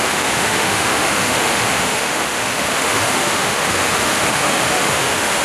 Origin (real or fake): fake